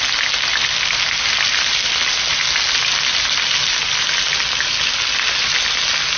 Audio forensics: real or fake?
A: real